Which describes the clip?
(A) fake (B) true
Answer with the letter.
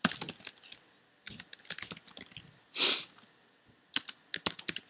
B